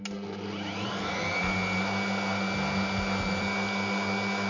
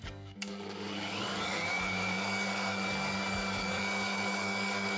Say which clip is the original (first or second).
first